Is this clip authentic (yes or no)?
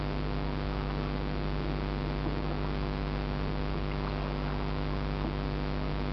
yes